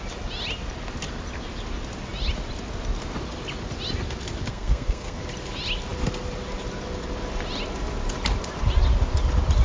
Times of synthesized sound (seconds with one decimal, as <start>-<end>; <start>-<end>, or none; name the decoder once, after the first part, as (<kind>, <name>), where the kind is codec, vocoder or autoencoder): 4.5-5.2 (codec, SNAC)